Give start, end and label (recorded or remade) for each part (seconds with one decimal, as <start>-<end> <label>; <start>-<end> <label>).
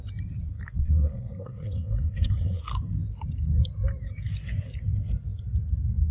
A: 0.0-0.8 recorded; 0.8-2.6 remade; 2.6-6.1 recorded